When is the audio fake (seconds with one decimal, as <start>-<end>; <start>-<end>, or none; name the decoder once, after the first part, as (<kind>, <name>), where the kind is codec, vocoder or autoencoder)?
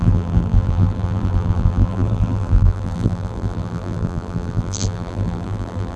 0.0-6.0 (vocoder, BigVGAN v2)